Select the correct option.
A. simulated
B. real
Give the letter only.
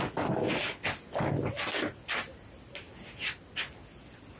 B